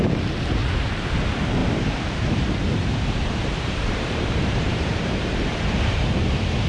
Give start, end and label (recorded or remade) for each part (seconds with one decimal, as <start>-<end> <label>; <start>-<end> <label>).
0.0-0.6 recorded; 0.6-1.1 remade; 1.1-1.6 recorded; 1.6-5.5 remade; 5.5-6.7 recorded